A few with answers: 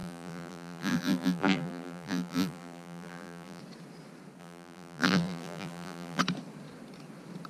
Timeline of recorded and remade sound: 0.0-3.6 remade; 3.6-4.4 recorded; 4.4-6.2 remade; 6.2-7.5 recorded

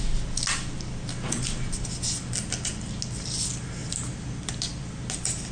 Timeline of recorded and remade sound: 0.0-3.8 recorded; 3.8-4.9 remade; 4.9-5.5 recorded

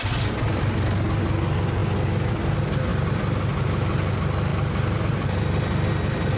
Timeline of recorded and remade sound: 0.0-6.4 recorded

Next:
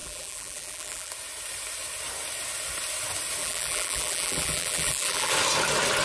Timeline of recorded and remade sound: 0.0-1.1 remade; 1.1-3.4 recorded; 3.4-5.3 remade; 5.3-6.0 recorded